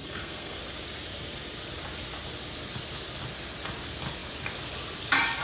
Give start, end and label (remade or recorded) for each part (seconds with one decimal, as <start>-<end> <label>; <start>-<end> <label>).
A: 0.0-0.6 remade; 0.6-5.4 recorded